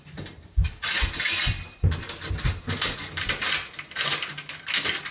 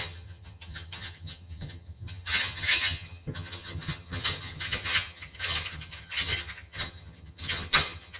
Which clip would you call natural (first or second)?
first